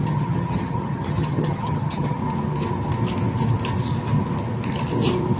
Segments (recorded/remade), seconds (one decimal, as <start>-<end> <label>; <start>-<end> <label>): 0.0-2.2 remade; 2.2-5.4 recorded